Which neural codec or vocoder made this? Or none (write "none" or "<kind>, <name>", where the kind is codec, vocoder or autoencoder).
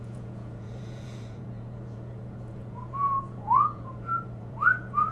vocoder, Vocos